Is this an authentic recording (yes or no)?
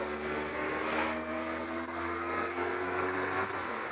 no